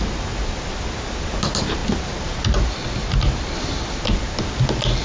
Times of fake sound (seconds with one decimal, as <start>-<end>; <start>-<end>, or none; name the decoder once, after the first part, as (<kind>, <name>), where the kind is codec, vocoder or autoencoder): none